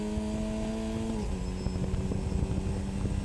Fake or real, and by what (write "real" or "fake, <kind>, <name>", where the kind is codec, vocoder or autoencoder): real